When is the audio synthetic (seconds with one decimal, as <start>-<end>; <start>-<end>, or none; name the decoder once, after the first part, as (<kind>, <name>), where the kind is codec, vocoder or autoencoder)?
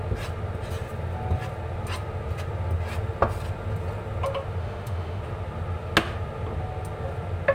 4.6-5.2 (autoencoder, DAC-VAE)